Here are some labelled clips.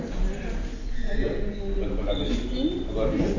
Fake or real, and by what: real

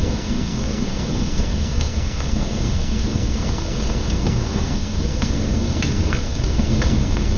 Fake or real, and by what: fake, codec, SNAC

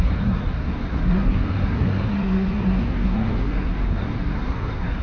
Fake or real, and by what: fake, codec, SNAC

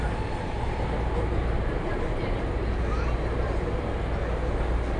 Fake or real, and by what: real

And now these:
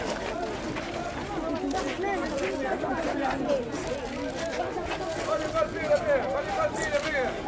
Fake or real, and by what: real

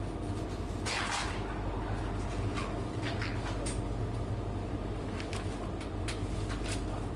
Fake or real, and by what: real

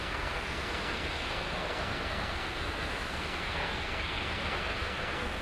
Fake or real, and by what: fake, codec, SNAC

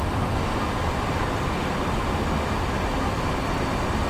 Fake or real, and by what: real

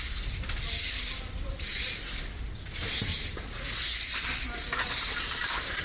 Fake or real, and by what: real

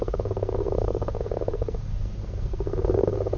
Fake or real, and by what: fake, codec, SNAC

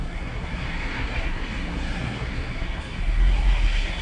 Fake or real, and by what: fake, codec, SNAC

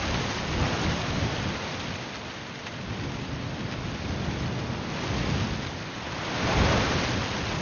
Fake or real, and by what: real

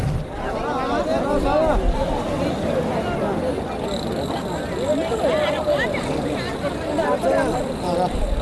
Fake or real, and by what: real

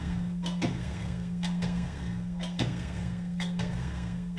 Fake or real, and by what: fake, codec, SNAC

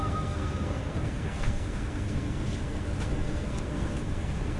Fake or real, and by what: fake, codec, SNAC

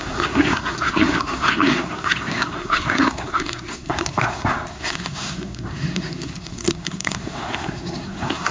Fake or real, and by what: fake, codec, SNAC